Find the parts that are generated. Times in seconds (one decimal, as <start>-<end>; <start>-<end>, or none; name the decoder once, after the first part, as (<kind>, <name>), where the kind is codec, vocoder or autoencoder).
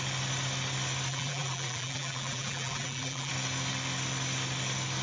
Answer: 1.1-3.3 (vocoder, BigVGAN v2)